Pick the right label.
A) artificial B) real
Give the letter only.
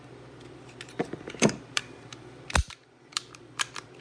A